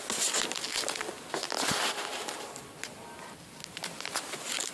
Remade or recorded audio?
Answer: recorded